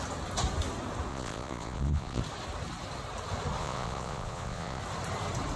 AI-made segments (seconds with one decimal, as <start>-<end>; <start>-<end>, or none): 1.1-2.2; 3.6-4.8